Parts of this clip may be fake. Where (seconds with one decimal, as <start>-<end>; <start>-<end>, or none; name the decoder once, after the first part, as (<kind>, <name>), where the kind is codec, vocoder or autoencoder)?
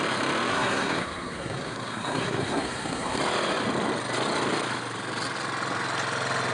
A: 0.5-3.2 (codec, SNAC)